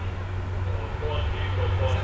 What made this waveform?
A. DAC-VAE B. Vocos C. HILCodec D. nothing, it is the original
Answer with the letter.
D